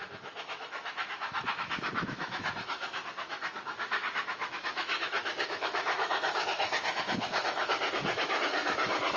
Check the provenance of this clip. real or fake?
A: fake